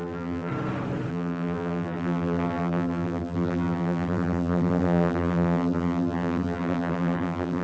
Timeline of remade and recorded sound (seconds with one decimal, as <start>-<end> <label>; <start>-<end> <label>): 0.0-0.5 remade; 0.5-1.1 recorded; 1.1-7.6 remade